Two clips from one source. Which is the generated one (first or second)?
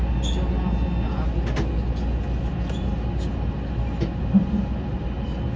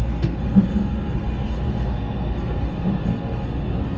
second